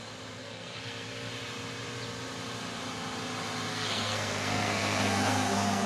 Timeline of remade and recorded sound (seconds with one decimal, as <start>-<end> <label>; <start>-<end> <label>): 0.0-0.4 recorded; 0.4-1.3 remade; 1.3-3.7 recorded; 3.7-5.9 remade